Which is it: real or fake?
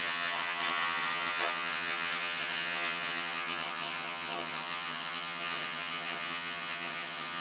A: fake